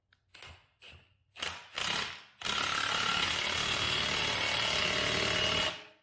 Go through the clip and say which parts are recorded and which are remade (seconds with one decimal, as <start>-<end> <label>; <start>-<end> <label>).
0.0-6.0 recorded